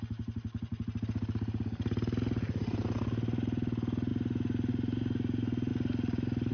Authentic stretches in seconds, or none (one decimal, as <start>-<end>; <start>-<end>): 0.0-6.5